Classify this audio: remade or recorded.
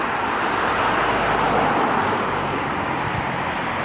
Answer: recorded